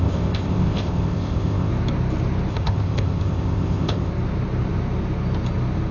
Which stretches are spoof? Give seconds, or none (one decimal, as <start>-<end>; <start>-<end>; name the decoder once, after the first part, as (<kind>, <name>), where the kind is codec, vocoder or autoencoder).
0.0-1.7 (codec, ZipCodec); 2.5-4.1